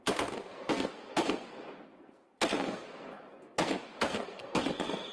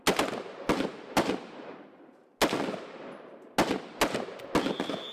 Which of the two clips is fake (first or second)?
first